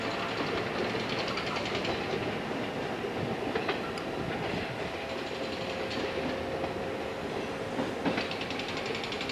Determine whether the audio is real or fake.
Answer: real